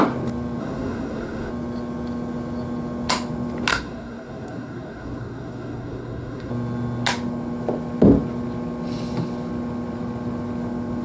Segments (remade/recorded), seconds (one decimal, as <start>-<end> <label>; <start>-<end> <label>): 0.0-0.6 recorded; 0.6-1.5 remade; 1.5-3.7 recorded; 3.7-6.5 remade; 6.5-11.0 recorded